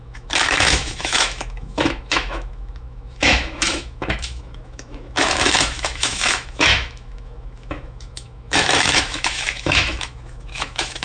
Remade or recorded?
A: remade